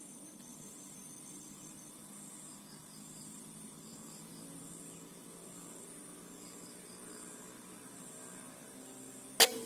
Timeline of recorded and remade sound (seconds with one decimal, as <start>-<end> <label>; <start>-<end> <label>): 0.0-0.5 recorded; 0.5-2.0 remade; 2.0-2.8 recorded; 2.8-4.3 remade; 4.3-9.7 recorded